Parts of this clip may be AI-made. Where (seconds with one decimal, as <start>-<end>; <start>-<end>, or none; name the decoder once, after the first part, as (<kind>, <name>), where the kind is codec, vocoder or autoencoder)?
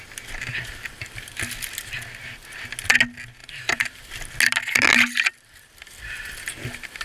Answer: 3.4-4.0 (vocoder, BigVGAN v2)